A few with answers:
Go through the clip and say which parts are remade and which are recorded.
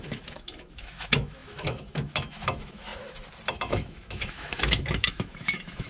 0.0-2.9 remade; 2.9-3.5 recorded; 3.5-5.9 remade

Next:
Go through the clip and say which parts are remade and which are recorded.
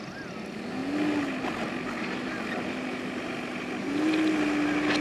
0.0-5.0 recorded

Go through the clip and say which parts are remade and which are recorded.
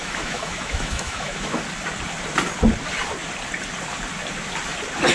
0.0-1.6 remade; 1.6-5.1 recorded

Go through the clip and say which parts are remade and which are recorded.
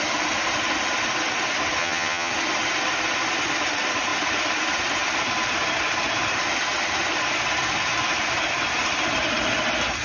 0.0-1.8 recorded; 1.8-2.3 remade; 2.3-10.0 recorded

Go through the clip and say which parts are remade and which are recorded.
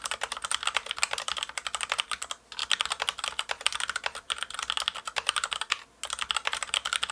0.0-7.1 recorded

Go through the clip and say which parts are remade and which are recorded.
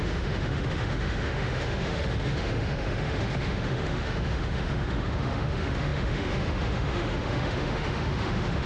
0.0-8.7 remade